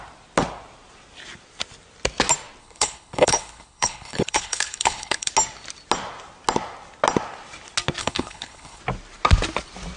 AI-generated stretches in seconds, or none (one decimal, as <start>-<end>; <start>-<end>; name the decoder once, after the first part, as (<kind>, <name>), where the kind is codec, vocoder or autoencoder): 2.6-5.3 (codec, HILCodec); 8.0-8.8